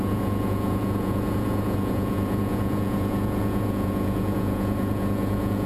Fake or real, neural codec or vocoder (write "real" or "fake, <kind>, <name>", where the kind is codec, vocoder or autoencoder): fake, vocoder, Vocos